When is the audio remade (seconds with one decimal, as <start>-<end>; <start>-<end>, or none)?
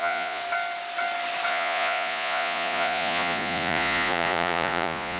0.0-0.4; 1.5-5.2